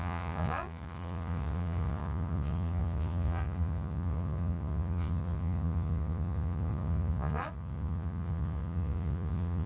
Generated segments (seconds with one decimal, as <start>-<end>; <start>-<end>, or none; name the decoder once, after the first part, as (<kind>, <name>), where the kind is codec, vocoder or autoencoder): 0.0-9.7 (vocoder, Vocos)